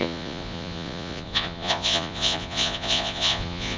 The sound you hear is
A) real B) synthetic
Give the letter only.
B